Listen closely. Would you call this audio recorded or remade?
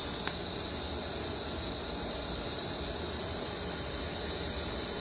recorded